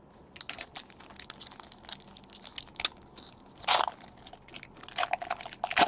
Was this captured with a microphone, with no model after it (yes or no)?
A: yes